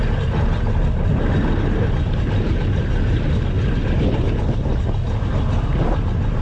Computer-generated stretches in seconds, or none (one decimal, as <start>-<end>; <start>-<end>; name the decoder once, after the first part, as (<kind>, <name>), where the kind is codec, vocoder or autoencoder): none